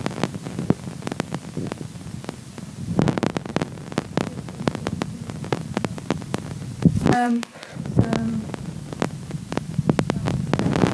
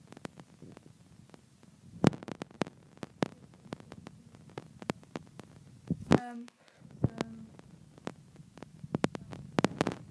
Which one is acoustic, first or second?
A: second